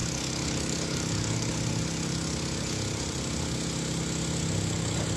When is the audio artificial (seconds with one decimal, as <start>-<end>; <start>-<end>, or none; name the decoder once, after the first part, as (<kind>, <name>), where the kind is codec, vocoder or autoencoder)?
0.0-1.5 (codec, DAC)